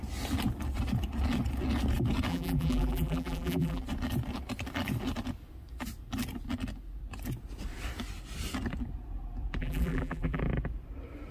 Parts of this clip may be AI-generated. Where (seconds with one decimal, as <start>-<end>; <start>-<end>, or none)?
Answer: 2.3-3.8; 9.6-10.4